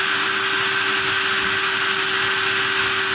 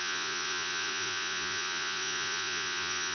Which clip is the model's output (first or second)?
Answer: second